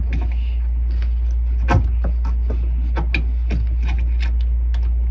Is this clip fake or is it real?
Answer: real